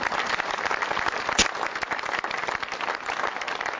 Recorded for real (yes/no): yes